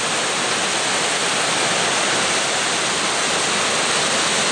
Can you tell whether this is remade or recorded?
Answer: recorded